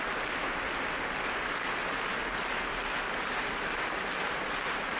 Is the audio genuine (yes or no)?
yes